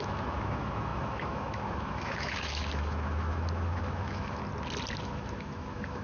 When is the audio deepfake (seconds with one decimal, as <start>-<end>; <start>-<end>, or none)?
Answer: 0.0-4.4; 5.0-6.0